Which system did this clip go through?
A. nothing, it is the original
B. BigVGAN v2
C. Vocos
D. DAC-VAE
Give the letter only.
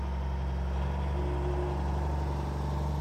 A